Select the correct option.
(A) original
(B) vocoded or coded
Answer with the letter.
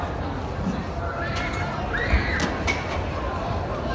A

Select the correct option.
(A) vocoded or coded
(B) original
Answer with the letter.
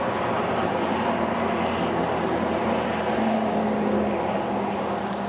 B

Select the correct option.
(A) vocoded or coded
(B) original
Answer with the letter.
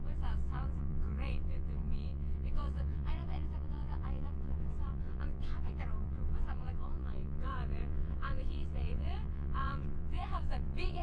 A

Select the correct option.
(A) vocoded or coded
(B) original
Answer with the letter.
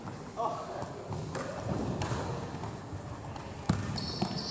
B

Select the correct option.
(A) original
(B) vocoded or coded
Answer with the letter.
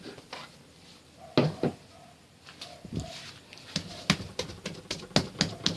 A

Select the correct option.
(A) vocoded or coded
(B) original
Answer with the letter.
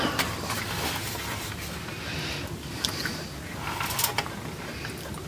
B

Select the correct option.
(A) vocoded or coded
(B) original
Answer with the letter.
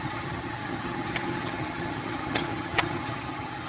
A